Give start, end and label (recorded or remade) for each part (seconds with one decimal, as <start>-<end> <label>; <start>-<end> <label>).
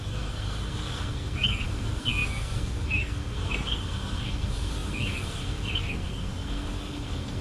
0.0-7.4 remade